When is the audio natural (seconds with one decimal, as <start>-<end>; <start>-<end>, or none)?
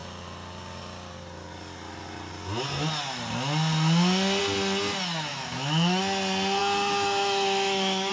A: 0.0-5.3; 6.0-6.6